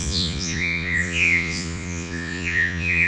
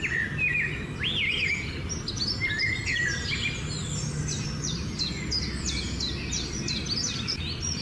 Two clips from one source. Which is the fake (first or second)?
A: first